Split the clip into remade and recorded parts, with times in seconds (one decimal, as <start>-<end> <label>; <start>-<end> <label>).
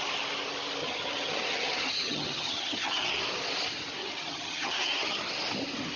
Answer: 0.0-0.8 recorded; 0.8-3.1 remade; 3.1-4.0 recorded; 4.0-5.3 remade; 5.3-6.0 recorded